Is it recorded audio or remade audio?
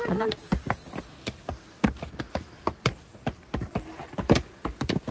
recorded